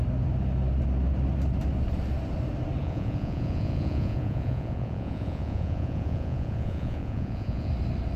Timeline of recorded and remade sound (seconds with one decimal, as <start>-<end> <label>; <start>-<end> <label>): 0.0-2.8 recorded; 2.8-7.7 remade; 7.7-8.2 recorded